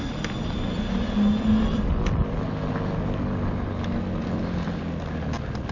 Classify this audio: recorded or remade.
recorded